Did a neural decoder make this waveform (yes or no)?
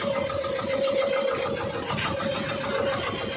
no